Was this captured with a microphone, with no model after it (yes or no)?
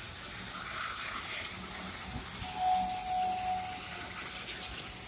yes